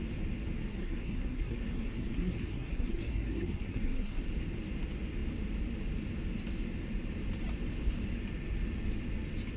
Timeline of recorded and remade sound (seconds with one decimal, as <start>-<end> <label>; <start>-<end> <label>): 0.0-0.7 recorded; 0.7-4.2 remade; 4.2-9.6 recorded